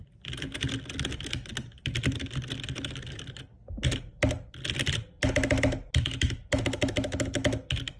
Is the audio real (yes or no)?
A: yes